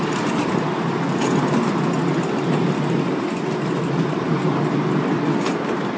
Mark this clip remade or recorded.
recorded